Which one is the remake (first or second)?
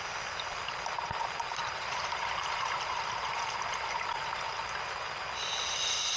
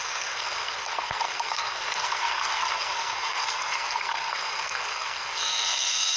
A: second